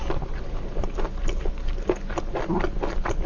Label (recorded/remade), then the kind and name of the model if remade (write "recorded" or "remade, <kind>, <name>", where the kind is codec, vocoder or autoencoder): recorded